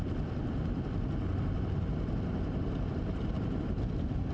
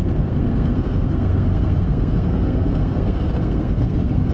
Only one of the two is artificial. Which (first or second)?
second